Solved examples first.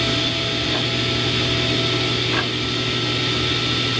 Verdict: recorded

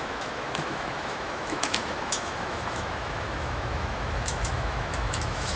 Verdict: remade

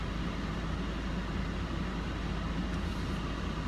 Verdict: recorded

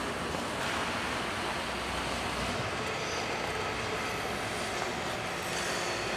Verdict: recorded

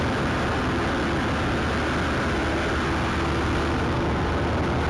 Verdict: recorded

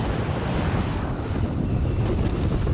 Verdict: remade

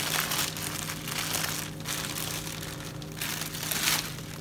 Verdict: recorded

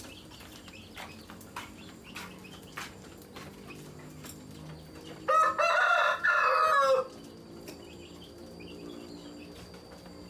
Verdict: recorded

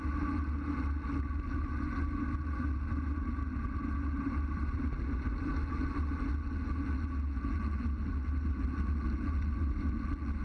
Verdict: recorded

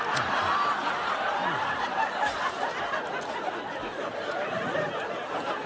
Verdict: recorded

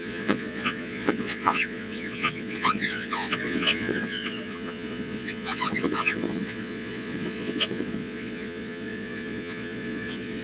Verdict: remade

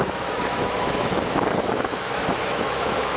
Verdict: remade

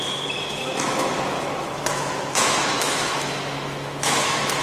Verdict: remade